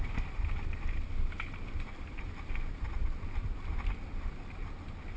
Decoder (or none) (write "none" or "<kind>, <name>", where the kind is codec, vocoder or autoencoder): none